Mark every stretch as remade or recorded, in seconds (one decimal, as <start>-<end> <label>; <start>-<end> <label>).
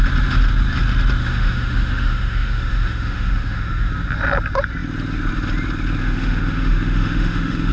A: 0.0-1.2 recorded; 1.2-3.9 remade; 3.9-6.0 recorded; 6.0-7.7 remade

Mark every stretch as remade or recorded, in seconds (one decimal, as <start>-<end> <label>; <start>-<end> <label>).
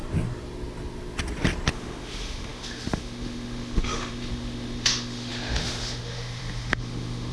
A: 0.0-1.7 recorded; 1.7-7.3 remade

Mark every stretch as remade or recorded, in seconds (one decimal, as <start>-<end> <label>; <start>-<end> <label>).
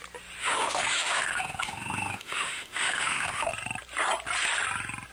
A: 0.0-0.4 recorded; 0.4-3.5 remade; 3.5-5.1 recorded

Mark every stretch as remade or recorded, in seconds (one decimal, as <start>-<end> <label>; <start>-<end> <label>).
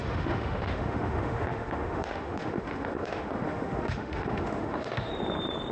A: 0.0-5.1 remade; 5.1-5.7 recorded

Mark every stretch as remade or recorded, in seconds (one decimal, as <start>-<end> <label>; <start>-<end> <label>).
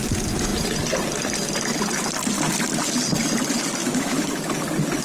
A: 0.0-3.8 recorded; 3.8-4.3 remade; 4.3-5.0 recorded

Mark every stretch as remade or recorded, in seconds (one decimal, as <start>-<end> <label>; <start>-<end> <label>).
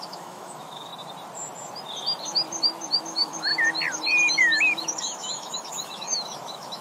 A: 0.0-0.9 remade; 0.9-3.0 recorded; 3.0-3.5 remade; 3.5-4.4 recorded; 4.4-6.8 remade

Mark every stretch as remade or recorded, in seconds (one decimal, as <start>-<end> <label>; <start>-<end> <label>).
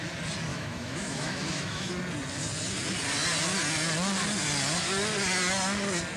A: 0.0-0.5 recorded; 0.5-1.9 remade; 1.9-6.2 recorded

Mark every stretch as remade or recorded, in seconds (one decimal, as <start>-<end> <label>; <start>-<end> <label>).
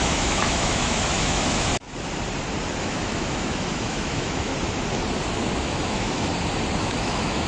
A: 0.0-1.7 remade; 1.7-2.8 recorded; 2.8-4.5 remade; 4.5-5.6 recorded; 5.6-6.3 remade; 6.3-6.8 recorded; 6.8-7.5 remade